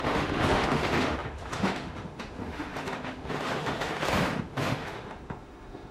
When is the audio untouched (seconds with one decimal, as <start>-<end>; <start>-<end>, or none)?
none